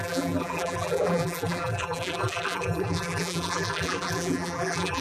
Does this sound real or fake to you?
fake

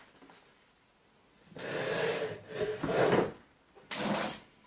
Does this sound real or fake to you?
real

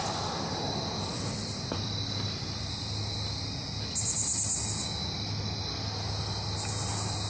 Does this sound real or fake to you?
real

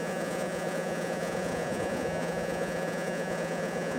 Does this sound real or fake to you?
fake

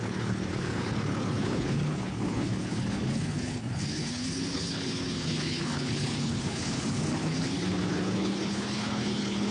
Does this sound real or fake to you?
fake